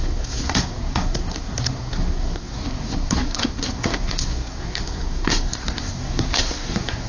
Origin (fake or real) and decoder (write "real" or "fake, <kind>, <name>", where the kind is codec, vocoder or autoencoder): fake, codec, SNAC